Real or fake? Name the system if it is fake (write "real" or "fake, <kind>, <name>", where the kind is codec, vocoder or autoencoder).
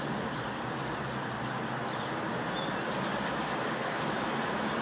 real